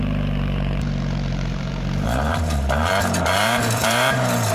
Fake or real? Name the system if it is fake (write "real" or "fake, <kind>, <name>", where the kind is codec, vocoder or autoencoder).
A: fake, vocoder, BigVGAN v2